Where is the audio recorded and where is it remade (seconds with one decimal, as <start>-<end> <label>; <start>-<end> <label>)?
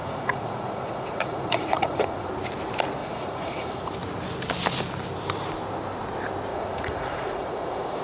0.0-2.3 remade; 2.3-3.0 recorded; 3.0-3.9 remade; 3.9-6.5 recorded; 6.5-8.0 remade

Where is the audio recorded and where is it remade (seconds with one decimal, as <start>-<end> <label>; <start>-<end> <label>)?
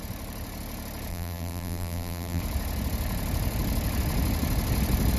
0.0-1.1 recorded; 1.1-2.4 remade; 2.4-5.2 recorded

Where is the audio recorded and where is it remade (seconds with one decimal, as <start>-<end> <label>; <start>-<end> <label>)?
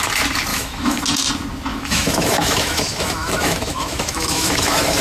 0.0-0.5 recorded; 0.5-1.0 remade; 1.0-1.7 recorded; 1.7-5.0 remade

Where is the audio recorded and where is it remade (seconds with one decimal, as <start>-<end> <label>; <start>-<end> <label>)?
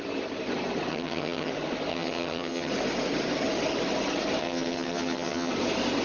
0.0-0.9 recorded; 0.9-1.5 remade; 1.5-1.9 recorded; 1.9-2.7 remade; 2.7-4.4 recorded; 4.4-5.5 remade; 5.5-6.0 recorded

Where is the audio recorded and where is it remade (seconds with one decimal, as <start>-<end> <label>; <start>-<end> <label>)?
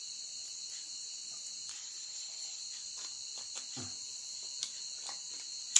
0.0-1.7 recorded; 1.7-2.6 remade; 2.6-5.8 recorded